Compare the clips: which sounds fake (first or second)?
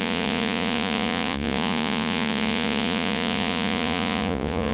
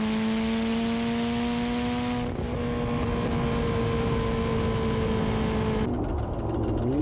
first